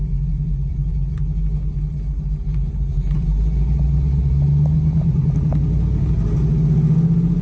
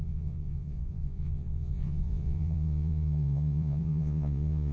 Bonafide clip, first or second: first